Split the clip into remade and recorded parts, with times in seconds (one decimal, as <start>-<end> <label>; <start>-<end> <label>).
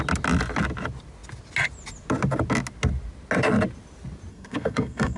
0.0-4.3 recorded; 4.3-5.2 remade